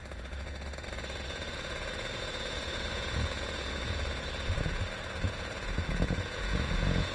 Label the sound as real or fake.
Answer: fake